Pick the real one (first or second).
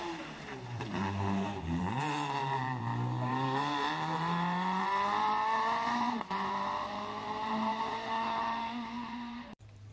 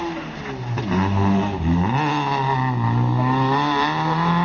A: second